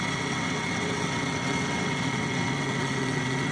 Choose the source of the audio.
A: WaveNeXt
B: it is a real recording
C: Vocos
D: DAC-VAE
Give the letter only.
A